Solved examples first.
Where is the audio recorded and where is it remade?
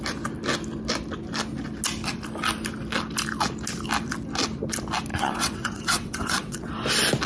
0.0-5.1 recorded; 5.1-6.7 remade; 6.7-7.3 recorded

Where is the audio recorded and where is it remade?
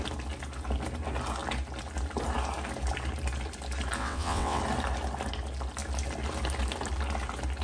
0.0-4.0 recorded; 4.0-4.6 remade; 4.6-7.6 recorded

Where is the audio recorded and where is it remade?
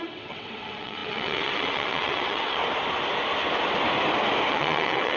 0.0-2.6 remade; 2.6-4.5 recorded; 4.5-5.2 remade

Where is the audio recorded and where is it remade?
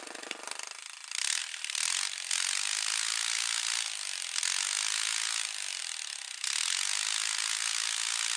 0.0-8.4 recorded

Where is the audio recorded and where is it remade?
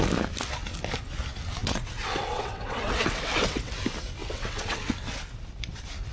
0.0-1.6 recorded; 1.6-3.7 remade; 3.7-4.2 recorded; 4.2-4.9 remade; 4.9-6.1 recorded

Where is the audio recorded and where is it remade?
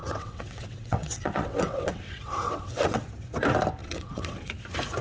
0.0-3.0 remade; 3.0-3.8 recorded; 3.8-4.5 remade; 4.5-5.0 recorded